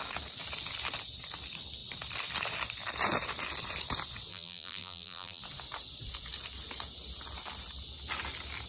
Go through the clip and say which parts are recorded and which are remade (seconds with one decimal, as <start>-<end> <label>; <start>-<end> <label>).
0.0-4.3 recorded; 4.3-5.4 remade; 5.4-8.7 recorded